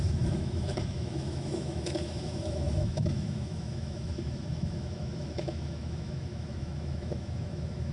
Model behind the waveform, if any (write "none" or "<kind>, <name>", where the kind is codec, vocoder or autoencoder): autoencoder, DAC-VAE